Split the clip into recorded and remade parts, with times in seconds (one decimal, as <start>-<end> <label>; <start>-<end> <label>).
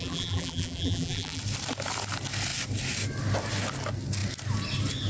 0.0-1.4 remade; 1.4-5.1 recorded